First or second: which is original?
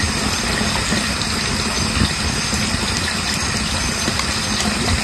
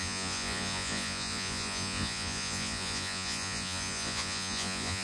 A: first